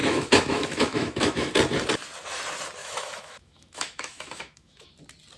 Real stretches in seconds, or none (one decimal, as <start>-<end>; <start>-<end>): 1.5-2.8; 4.9-5.4